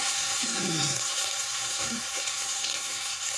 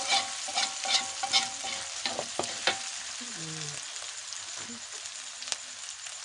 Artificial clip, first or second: first